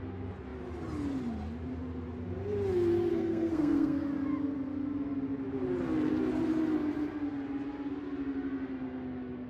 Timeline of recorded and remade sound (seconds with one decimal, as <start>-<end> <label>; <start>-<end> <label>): 0.0-3.1 recorded; 3.1-4.0 remade; 4.0-9.5 recorded